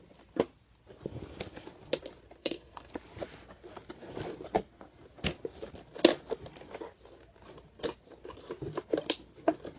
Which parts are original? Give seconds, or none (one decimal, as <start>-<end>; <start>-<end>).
0.0-2.4; 2.9-9.8